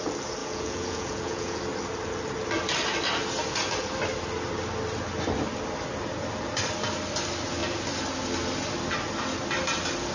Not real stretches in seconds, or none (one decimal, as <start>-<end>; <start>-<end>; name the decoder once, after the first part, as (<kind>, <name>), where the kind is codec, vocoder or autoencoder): 0.4-1.6 (vocoder, Vocos)